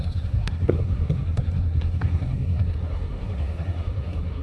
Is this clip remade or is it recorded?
remade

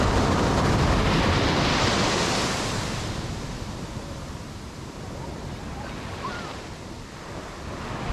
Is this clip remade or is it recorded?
recorded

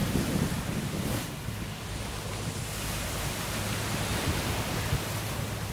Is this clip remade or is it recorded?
recorded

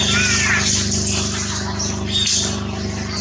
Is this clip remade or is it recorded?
recorded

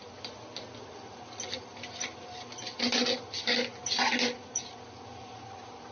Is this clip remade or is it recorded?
recorded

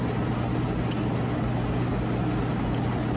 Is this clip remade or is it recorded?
recorded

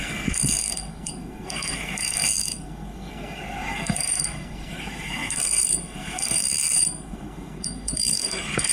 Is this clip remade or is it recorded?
remade